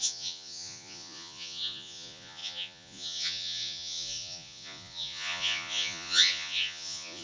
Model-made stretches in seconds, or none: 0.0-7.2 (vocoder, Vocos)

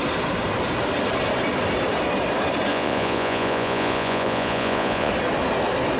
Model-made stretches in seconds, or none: 2.7-5.1 (vocoder, Vocos)

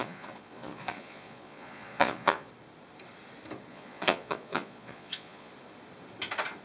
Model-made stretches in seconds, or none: 0.0-2.5 (vocoder, Vocos); 3.7-5.5